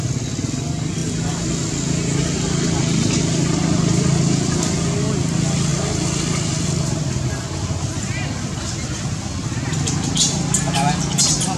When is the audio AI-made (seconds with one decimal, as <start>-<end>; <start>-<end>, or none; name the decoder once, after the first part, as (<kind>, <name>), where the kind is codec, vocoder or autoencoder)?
none